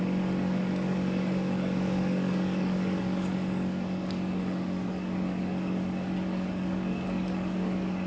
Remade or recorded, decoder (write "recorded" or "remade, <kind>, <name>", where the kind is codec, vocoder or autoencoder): remade, codec, DAC